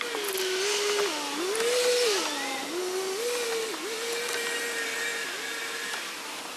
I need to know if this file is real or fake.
real